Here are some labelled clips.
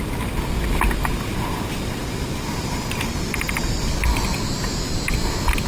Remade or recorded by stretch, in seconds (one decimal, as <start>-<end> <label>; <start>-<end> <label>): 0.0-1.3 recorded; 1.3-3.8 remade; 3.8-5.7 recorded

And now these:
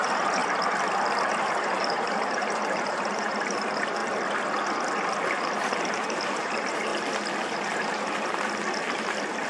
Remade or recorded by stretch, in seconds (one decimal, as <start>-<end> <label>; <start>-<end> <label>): 0.0-0.4 remade; 0.4-1.4 recorded; 1.4-4.0 remade; 4.0-5.9 recorded; 5.9-6.9 remade; 6.9-9.5 recorded

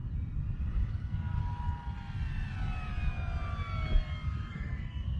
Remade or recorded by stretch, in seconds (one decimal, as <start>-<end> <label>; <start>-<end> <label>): 0.0-0.9 recorded; 0.9-1.4 remade; 1.4-4.5 recorded; 4.5-5.2 remade

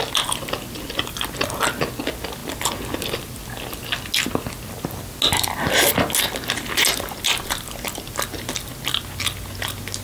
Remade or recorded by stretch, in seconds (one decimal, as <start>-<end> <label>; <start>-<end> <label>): 0.0-10.0 recorded